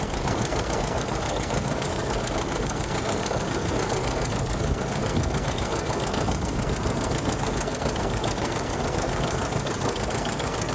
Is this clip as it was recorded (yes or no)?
no